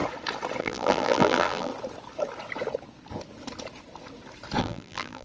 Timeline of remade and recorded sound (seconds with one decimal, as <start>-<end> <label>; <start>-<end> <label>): 0.0-0.6 recorded; 0.6-1.7 remade; 1.7-4.6 recorded; 4.6-5.2 remade